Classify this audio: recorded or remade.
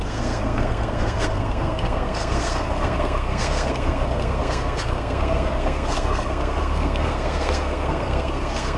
remade